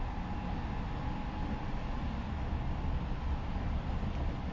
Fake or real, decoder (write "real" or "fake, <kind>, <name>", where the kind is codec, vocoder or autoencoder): real